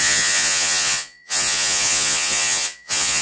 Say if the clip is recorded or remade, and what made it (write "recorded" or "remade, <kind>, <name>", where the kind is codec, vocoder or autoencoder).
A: remade, vocoder, Vocos